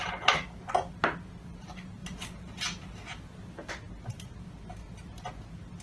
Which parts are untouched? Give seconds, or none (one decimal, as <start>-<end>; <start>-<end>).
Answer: 0.0-5.8